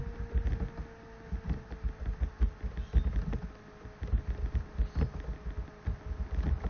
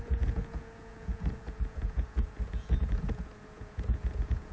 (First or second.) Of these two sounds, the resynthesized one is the second